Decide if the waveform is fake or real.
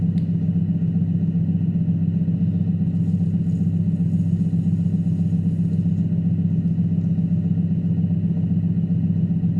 real